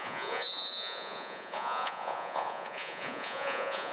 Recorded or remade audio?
remade